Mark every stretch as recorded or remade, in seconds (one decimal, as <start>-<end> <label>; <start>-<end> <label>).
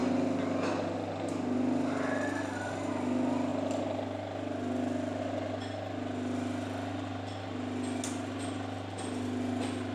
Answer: 0.0-9.9 recorded